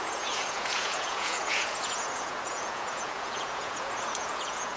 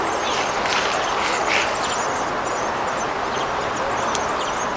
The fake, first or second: first